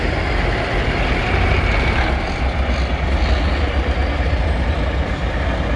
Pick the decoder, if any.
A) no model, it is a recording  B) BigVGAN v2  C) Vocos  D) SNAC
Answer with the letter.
A